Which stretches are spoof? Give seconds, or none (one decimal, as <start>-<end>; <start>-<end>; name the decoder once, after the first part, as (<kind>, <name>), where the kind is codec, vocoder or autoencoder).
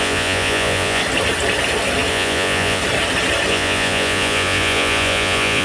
0.0-1.0 (vocoder, Vocos); 2.1-2.8; 3.5-5.6